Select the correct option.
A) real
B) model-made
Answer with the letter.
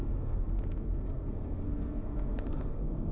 B